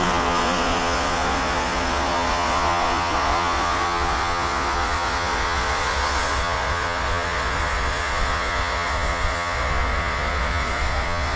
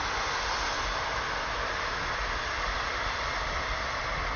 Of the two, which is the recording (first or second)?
second